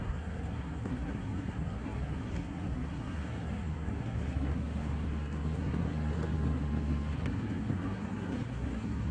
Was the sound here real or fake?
fake